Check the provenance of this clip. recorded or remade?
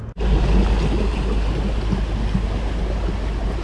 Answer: recorded